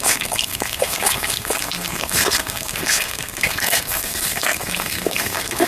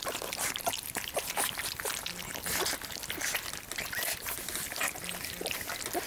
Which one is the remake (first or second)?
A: first